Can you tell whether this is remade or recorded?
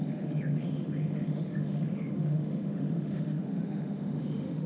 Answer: remade